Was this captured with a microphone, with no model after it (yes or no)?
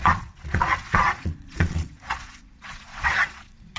no